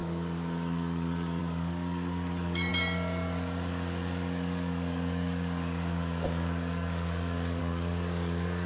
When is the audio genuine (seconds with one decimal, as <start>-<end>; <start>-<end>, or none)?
none